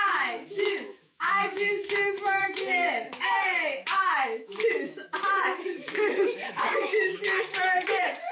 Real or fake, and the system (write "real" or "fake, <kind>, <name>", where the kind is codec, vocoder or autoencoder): fake, autoencoder, DAC-VAE